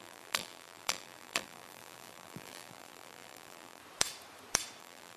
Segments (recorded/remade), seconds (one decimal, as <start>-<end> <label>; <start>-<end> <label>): 0.0-3.8 remade; 3.8-4.8 recorded; 4.8-5.2 remade

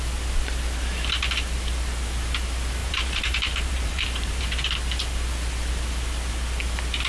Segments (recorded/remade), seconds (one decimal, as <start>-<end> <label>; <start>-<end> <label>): 0.0-2.8 recorded; 2.8-4.4 remade; 4.4-7.1 recorded

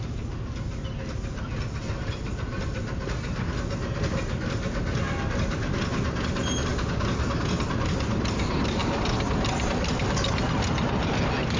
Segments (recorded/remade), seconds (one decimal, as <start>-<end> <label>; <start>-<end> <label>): 0.0-11.6 recorded

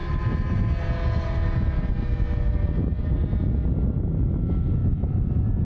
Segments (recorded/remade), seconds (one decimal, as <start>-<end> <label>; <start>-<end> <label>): 0.0-4.8 recorded; 4.8-5.6 remade